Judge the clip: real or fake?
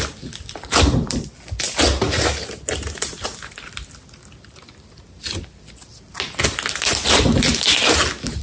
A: real